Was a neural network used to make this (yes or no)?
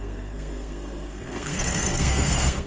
yes